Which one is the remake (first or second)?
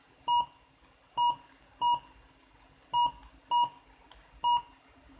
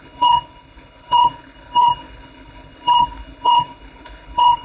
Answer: second